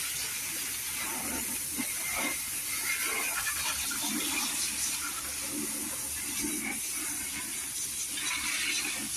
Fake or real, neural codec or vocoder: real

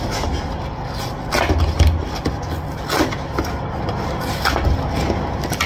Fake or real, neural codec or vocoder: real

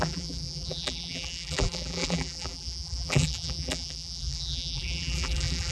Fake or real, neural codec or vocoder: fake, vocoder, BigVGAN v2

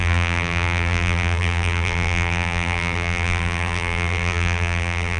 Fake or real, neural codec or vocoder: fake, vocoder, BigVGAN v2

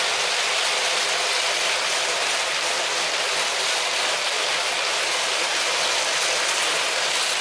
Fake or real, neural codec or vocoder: real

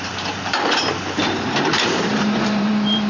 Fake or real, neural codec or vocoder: fake, vocoder, BigVGAN v2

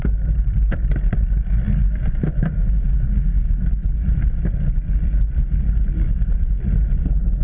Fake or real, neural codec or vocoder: real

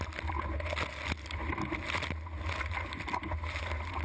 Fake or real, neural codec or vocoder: real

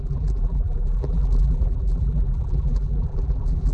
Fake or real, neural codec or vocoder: fake, vocoder, BigVGAN v2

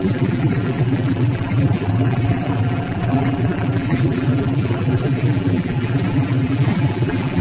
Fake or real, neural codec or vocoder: fake, vocoder, BigVGAN v2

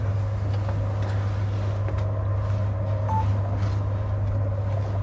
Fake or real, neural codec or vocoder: real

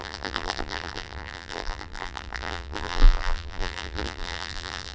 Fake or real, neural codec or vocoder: fake, vocoder, BigVGAN v2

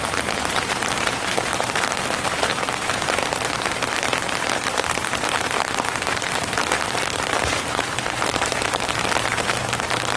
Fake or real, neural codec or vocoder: fake, vocoder, BigVGAN v2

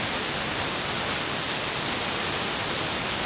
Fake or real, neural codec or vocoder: real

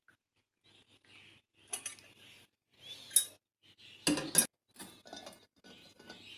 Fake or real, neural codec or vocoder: real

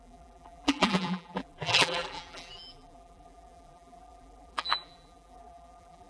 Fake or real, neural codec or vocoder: fake, vocoder, BigVGAN v2